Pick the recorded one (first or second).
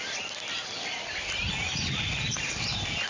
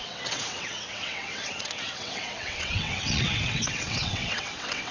first